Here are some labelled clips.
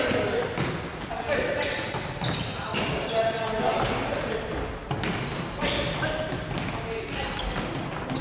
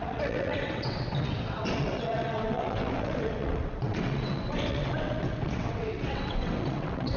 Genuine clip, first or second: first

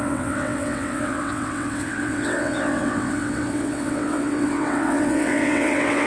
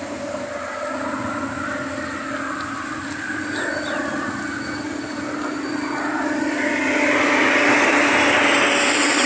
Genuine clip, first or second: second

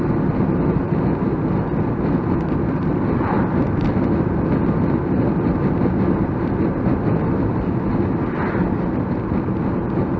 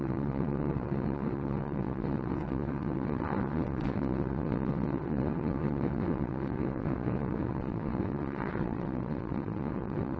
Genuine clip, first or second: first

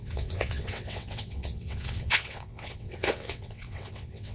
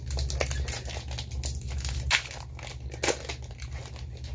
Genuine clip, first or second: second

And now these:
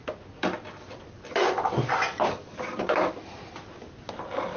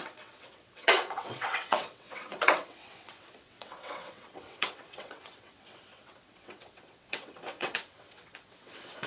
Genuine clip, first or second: first